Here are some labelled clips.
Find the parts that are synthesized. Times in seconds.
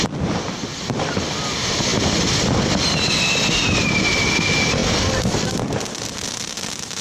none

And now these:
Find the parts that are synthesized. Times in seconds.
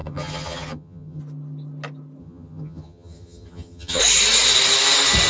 0.0-1.2 (vocoder, HiFi-GAN); 2.2-4.0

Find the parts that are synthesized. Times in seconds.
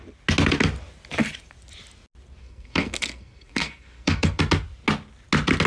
2.4-4.4 (codec, SNAC)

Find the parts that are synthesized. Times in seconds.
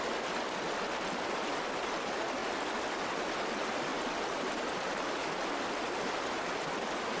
none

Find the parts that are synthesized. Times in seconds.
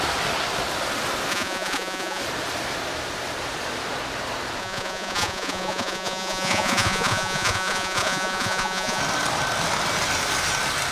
1.3-2.2 (vocoder, Vocos); 4.6-9.0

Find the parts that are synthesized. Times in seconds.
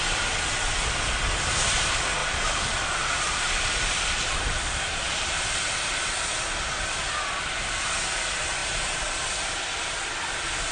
2.2-5.7 (vocoder, BigVGAN v2)